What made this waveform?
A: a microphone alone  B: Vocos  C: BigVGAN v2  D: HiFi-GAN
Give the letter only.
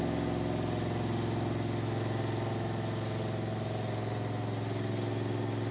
A